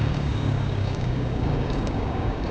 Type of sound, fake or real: fake